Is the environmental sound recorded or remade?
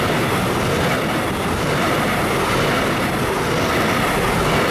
recorded